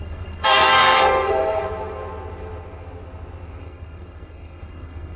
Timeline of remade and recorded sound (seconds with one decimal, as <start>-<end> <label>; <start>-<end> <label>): 0.0-1.6 remade; 1.6-3.6 recorded; 3.6-5.2 remade